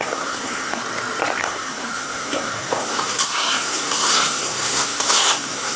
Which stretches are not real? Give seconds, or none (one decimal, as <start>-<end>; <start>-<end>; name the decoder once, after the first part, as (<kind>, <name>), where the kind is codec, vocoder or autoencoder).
0.0-0.8 (codec, SNAC); 1.4-5.8